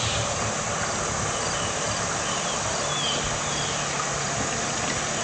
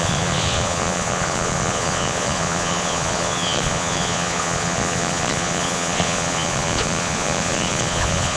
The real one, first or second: first